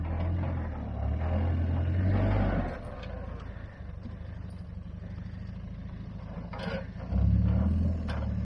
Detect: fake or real real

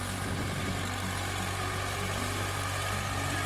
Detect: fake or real real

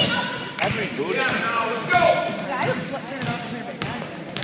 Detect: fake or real real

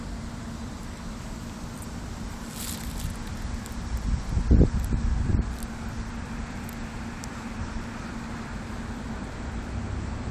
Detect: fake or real fake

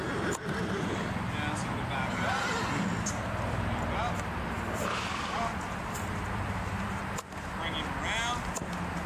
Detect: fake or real real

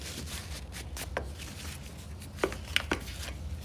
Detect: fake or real real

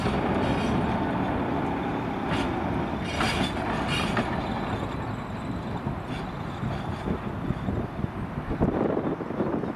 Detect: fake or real real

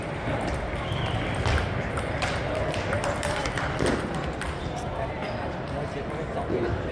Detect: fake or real fake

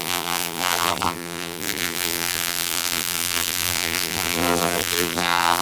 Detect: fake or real fake